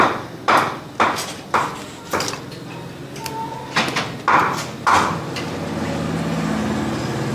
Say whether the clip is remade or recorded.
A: recorded